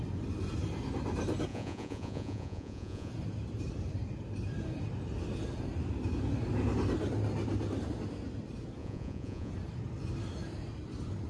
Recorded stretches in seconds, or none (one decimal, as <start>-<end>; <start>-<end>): 0.0-1.5; 3.1-8.8; 9.5-11.3